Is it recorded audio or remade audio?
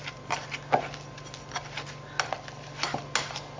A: recorded